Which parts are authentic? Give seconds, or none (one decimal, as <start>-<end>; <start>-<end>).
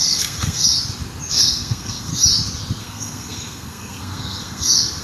0.7-1.3; 2.1-2.8